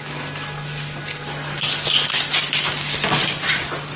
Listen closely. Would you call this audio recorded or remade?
recorded